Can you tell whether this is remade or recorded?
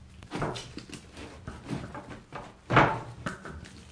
recorded